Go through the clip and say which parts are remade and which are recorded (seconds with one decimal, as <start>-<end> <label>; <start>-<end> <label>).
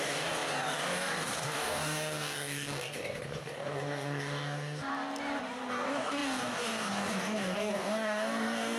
0.0-4.9 remade; 4.9-5.7 recorded; 5.7-8.8 remade